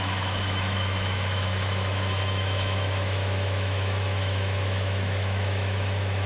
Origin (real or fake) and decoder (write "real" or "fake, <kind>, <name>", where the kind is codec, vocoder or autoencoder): fake, autoencoder, DAC-VAE